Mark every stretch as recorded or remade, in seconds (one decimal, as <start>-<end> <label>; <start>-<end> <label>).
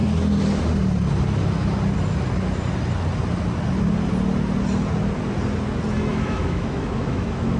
0.0-6.1 recorded; 6.1-7.6 remade